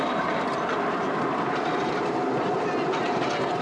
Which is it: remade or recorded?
recorded